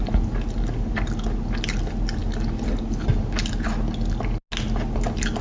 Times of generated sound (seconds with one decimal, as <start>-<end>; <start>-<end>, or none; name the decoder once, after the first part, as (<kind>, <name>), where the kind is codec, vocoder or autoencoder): none